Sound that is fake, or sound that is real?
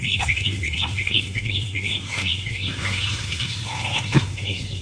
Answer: fake